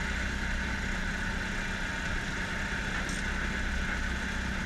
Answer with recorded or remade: recorded